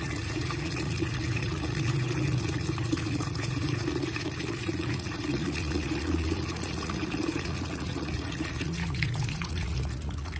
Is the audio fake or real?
fake